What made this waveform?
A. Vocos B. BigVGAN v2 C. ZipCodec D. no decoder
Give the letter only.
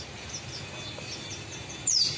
B